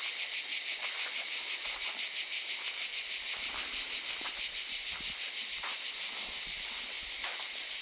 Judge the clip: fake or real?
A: real